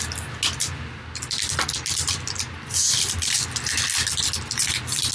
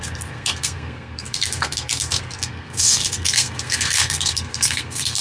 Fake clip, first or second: second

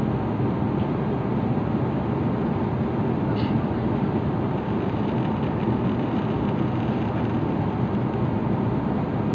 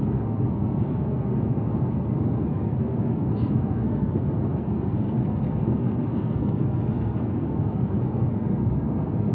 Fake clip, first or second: second